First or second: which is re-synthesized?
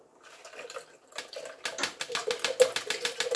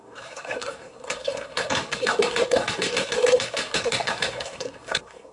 second